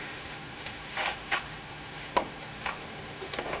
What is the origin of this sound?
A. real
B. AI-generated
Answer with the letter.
B